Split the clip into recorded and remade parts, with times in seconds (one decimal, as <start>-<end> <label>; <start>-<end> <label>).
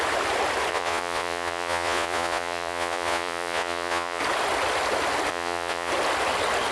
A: 0.0-0.7 recorded; 0.7-4.2 remade; 4.2-5.3 recorded; 5.3-5.9 remade; 5.9-6.7 recorded